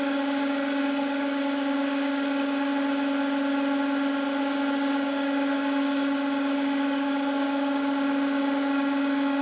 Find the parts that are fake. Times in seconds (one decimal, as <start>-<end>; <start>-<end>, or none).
0.0-2.7; 4.4-9.4